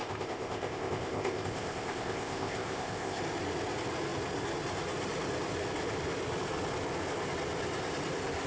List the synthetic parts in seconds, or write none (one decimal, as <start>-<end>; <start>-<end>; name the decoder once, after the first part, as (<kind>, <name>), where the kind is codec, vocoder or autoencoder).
0.0-3.2 (codec, ZipCodec)